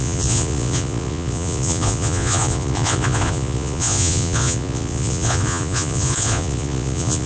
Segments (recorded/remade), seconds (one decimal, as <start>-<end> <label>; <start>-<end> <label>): 0.0-7.3 remade